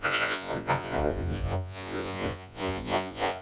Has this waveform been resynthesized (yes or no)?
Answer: yes